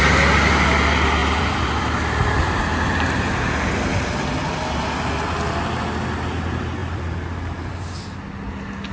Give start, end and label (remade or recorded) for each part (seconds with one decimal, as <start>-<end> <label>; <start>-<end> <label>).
0.0-1.2 recorded; 1.2-2.6 remade; 2.6-6.8 recorded; 6.8-7.8 remade; 7.8-8.9 recorded